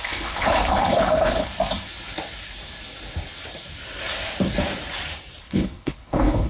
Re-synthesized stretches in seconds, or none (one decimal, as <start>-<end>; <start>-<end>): 0.0-1.5; 5.4-6.5